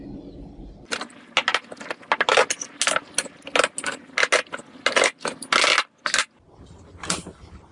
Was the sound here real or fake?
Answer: real